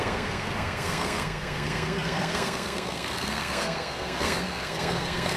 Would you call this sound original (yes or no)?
no